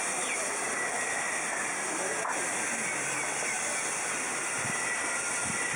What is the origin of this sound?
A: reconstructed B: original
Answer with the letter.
B